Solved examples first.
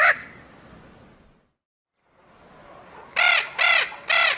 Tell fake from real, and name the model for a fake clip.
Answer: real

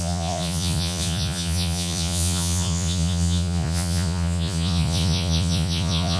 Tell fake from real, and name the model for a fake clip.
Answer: fake, vocoder, Vocos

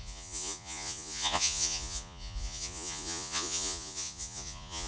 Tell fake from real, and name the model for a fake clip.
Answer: fake, vocoder, Vocos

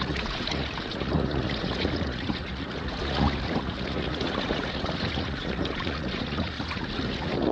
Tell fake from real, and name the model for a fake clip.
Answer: fake, vocoder, Vocos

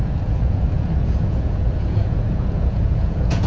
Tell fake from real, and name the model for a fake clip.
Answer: fake, vocoder, Vocos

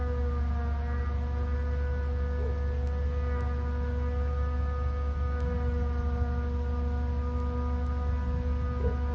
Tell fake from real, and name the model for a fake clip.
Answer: real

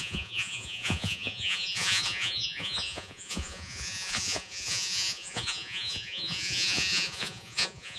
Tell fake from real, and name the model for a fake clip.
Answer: fake, vocoder, Vocos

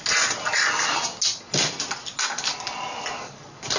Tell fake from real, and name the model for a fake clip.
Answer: real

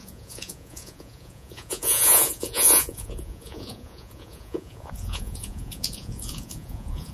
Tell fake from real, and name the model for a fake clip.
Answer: fake, vocoder, Vocos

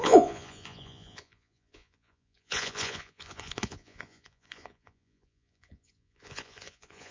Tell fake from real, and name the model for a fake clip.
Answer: fake, vocoder, Vocos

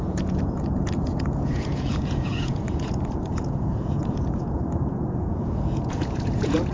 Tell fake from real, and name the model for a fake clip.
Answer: fake, vocoder, Vocos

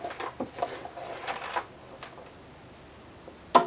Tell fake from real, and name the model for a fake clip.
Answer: real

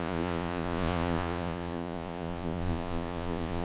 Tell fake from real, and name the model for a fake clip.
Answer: fake, vocoder, Vocos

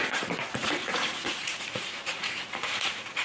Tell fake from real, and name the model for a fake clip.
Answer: fake, vocoder, Vocos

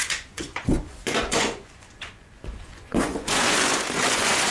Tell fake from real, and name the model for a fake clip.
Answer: fake, vocoder, Vocos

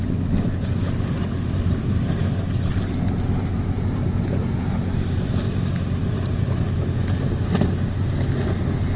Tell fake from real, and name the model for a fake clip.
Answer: real